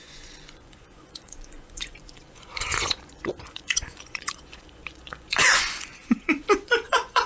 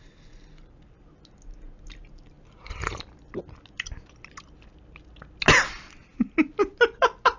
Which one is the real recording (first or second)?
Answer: second